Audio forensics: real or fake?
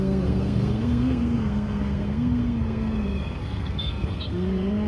fake